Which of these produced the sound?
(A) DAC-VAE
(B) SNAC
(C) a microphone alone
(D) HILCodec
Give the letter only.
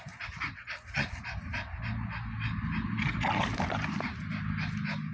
C